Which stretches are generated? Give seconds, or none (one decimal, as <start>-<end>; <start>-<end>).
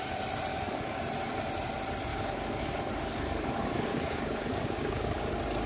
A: 0.5-1.0; 2.1-5.3